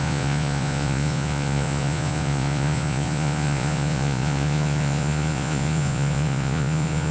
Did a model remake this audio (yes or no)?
yes